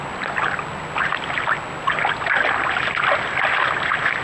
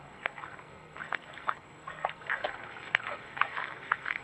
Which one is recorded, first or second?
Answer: first